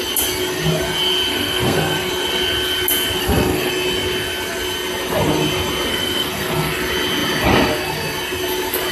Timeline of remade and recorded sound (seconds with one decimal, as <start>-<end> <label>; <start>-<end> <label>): 0.0-1.3 recorded; 1.3-2.1 remade; 2.1-3.2 recorded; 3.2-3.7 remade; 3.7-5.9 recorded; 5.9-6.7 remade; 6.7-8.9 recorded